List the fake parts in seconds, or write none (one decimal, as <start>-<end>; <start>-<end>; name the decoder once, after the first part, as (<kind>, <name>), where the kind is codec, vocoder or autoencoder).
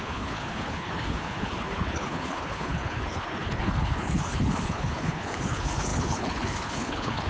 0.0-7.3 (codec, HILCodec)